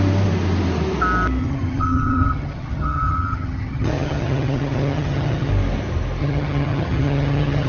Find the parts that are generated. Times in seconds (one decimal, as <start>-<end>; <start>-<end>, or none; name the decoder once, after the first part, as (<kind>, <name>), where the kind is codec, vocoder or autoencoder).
1.4-5.5 (vocoder, HiFi-GAN); 6.2-7.7